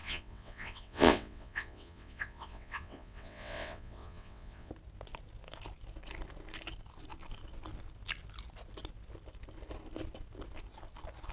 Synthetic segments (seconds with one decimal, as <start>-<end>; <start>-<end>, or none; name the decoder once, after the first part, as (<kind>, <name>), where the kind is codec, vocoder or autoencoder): 0.0-4.7 (vocoder, WaveNeXt)